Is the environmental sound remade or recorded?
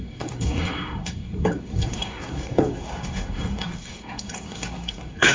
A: remade